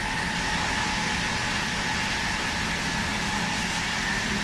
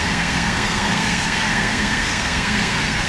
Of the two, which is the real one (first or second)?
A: first